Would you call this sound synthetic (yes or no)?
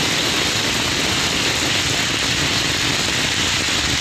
no